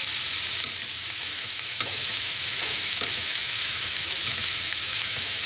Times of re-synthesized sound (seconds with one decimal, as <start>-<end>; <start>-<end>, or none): 1.0-5.5